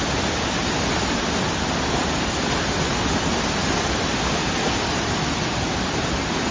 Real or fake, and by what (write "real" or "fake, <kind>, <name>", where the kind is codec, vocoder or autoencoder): real